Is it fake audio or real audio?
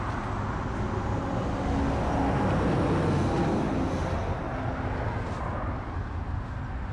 real